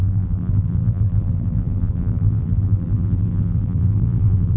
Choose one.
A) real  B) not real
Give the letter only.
B